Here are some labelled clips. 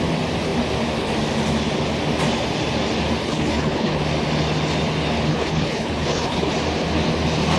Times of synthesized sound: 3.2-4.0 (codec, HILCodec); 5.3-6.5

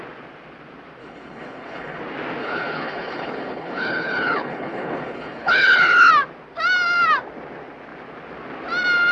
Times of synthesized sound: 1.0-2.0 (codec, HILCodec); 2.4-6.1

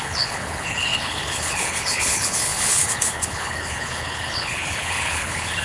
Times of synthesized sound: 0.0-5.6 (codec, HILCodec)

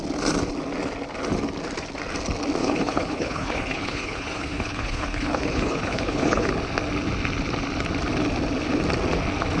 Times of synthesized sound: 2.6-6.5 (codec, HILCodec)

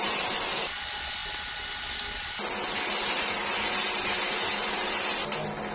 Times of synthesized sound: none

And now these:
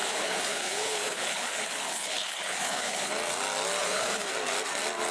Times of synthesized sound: 0.0-3.1 (codec, HILCodec); 3.8-4.3

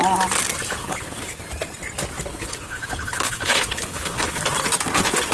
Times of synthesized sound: 0.8-1.4 (codec, HILCodec); 2.3-4.4

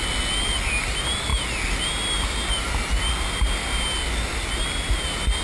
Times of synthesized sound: none